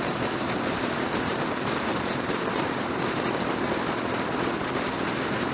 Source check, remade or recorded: remade